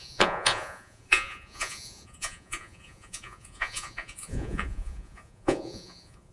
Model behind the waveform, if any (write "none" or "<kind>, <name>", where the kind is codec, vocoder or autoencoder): vocoder, Vocos